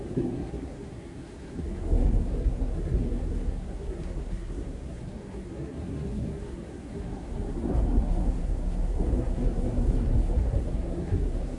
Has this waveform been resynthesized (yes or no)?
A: yes